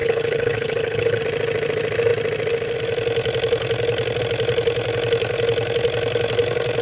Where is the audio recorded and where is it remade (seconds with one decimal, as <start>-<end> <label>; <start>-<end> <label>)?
0.0-1.2 remade; 1.2-6.8 recorded